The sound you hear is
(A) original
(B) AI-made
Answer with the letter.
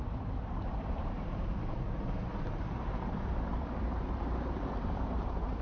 B